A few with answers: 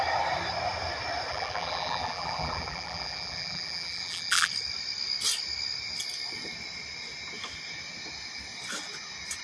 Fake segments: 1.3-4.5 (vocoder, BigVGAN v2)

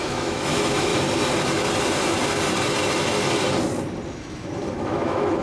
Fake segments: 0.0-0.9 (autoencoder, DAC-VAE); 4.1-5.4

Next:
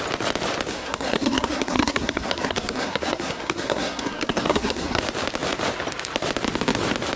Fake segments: 0.7-5.0 (codec, SNAC)

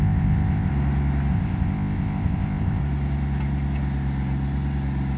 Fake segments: 0.0-0.7 (codec, ZipCodec); 1.3-2.8